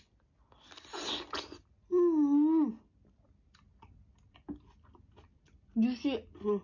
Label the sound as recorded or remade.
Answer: recorded